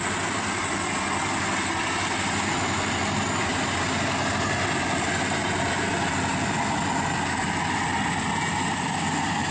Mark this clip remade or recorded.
recorded